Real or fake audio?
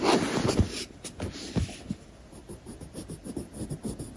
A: real